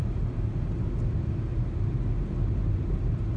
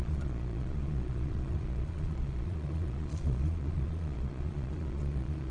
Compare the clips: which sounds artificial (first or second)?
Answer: second